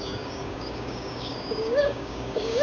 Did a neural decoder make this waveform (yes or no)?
yes